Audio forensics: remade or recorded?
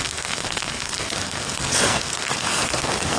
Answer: remade